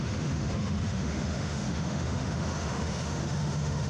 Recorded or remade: remade